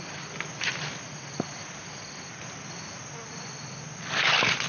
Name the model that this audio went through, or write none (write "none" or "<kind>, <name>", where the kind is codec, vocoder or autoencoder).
none